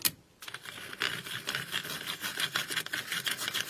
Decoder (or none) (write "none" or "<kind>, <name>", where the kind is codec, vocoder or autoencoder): none